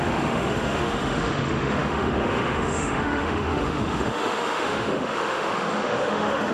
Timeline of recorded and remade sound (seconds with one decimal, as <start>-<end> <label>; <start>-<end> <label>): 0.0-6.5 remade